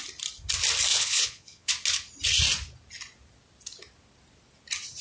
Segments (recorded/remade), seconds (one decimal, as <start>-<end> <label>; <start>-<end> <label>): 0.0-0.9 recorded; 0.9-1.7 remade; 1.7-5.0 recorded